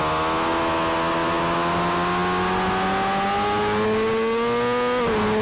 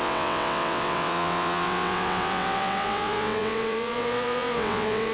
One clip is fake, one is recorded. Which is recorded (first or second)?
first